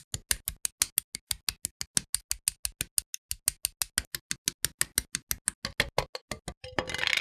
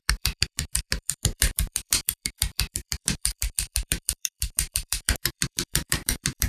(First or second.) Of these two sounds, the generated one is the second